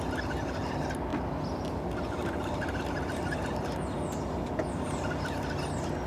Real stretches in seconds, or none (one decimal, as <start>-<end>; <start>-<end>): 0.0-6.1